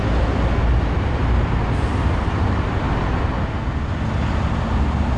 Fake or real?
real